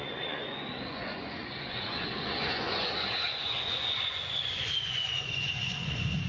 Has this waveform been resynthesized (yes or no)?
yes